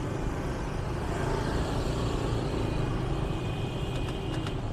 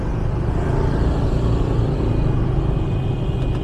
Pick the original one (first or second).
second